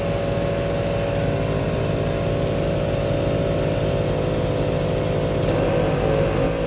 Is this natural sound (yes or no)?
yes